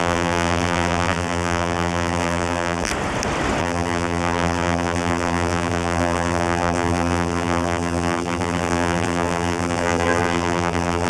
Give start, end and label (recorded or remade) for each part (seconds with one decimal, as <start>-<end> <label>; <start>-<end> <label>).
0.0-2.9 remade; 2.9-3.6 recorded; 3.6-11.1 remade